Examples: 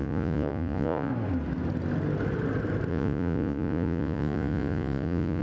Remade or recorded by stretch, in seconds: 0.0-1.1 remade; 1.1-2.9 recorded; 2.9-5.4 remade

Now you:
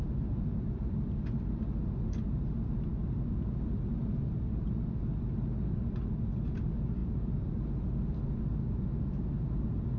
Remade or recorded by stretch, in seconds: 0.0-10.0 recorded

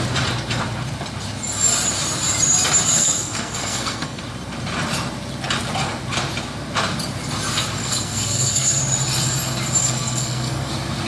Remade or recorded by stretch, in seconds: 0.0-2.9 recorded; 2.9-4.2 remade; 4.2-7.8 recorded; 7.8-8.8 remade; 8.8-9.8 recorded; 9.8-10.7 remade; 10.7-11.1 recorded

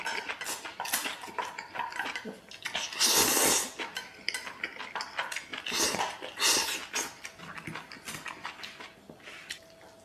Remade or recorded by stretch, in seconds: 0.0-10.0 recorded